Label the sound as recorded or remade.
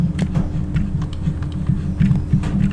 recorded